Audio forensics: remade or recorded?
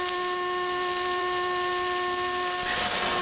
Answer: remade